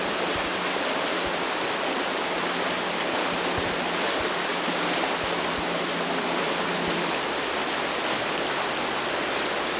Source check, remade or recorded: recorded